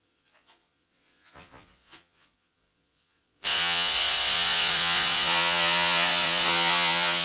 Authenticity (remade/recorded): remade